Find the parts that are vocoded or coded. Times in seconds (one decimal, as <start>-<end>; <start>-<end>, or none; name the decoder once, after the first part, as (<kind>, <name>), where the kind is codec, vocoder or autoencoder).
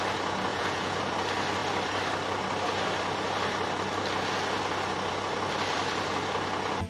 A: 0.5-1.0 (vocoder, Vocos)